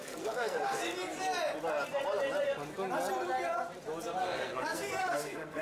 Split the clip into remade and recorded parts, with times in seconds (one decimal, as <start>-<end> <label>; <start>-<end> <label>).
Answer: 0.0-0.8 remade; 0.8-4.2 recorded; 4.2-5.6 remade